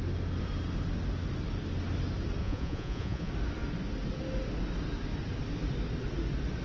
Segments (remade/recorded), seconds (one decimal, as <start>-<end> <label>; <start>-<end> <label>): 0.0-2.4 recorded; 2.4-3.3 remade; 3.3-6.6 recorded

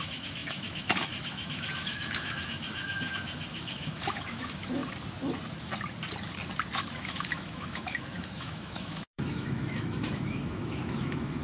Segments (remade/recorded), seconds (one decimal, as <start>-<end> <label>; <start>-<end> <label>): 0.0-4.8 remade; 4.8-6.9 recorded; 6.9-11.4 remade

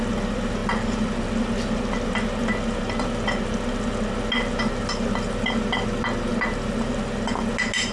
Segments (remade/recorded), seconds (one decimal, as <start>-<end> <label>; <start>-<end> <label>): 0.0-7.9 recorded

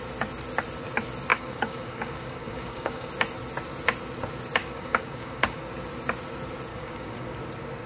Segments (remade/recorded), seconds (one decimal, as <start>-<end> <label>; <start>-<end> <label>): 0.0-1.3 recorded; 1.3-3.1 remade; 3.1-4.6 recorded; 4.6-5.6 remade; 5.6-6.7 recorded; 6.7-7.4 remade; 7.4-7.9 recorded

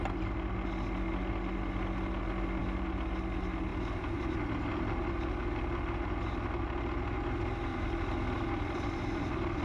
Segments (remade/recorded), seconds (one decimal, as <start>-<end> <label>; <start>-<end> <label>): 0.0-7.7 recorded; 7.7-8.9 remade; 8.9-9.6 recorded